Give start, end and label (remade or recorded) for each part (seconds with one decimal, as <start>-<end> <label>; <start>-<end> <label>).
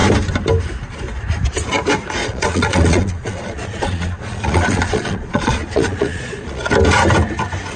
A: 0.0-2.2 recorded; 2.2-6.7 remade; 6.7-7.8 recorded